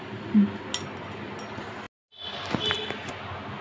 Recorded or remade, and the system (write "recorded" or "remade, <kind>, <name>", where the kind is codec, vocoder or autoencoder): recorded